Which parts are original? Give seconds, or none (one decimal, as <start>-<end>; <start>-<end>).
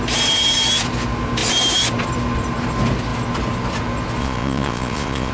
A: 0.0-4.2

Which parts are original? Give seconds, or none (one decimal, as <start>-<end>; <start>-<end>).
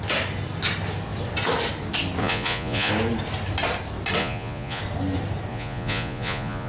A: 0.0-2.2; 2.9-4.2; 4.8-5.5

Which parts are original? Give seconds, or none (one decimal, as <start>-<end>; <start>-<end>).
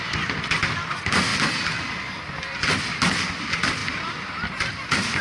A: 0.0-5.2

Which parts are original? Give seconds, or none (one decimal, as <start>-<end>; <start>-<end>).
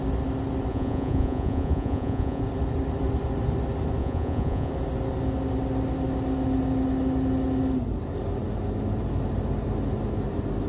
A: 0.0-0.7; 2.4-4.0; 4.7-10.7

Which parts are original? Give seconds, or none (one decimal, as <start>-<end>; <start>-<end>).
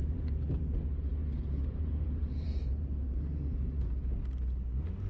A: 0.6-1.2; 3.8-5.1